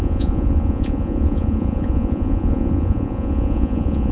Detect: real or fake fake